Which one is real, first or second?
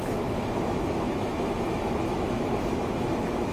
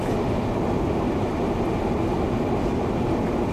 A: second